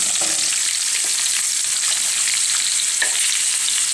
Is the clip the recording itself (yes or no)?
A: no